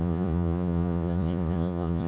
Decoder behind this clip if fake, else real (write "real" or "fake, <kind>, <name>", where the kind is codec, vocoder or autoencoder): fake, vocoder, Vocos